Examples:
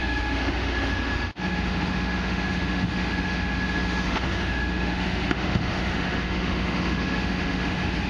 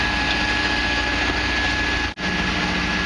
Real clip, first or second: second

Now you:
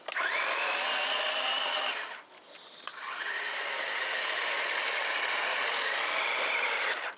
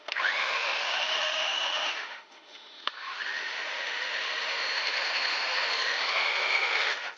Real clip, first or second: first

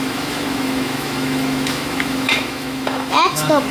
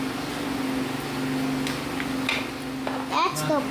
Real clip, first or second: second